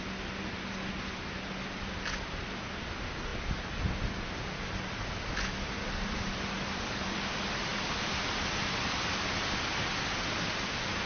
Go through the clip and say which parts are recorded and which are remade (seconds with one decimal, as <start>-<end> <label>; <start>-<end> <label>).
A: 0.0-11.1 recorded